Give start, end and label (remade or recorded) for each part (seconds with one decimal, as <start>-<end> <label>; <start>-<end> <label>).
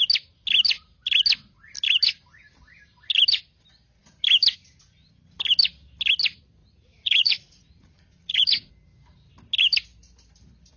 0.0-6.6 recorded; 6.6-8.7 remade; 8.7-10.8 recorded